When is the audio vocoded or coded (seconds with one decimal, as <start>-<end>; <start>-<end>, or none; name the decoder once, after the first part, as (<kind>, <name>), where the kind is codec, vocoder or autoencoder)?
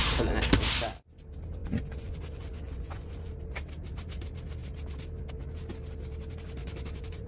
1.6-3.3 (vocoder, Vocos); 6.6-7.3